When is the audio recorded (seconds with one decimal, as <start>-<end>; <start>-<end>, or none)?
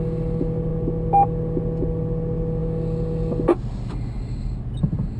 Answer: 0.0-5.2